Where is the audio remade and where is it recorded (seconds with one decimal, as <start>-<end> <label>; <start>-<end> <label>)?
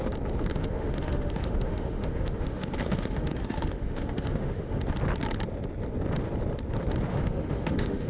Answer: 0.0-0.5 recorded; 0.5-4.8 remade; 4.8-7.1 recorded; 7.1-8.1 remade